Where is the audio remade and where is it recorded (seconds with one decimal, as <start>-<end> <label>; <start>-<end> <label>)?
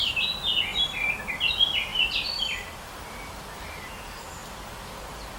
0.0-0.7 recorded; 0.7-1.5 remade; 1.5-1.9 recorded; 1.9-3.9 remade; 3.9-4.4 recorded; 4.4-5.4 remade